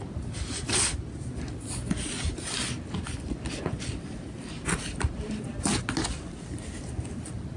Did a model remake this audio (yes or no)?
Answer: no